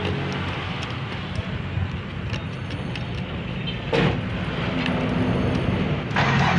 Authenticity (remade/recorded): recorded